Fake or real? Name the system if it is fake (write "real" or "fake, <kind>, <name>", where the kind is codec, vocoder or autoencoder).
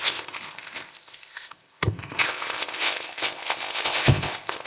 fake, codec, ZipCodec